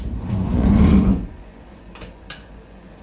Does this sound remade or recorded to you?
remade